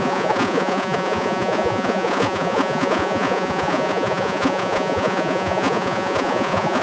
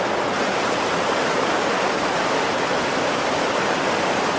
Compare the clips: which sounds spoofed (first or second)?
first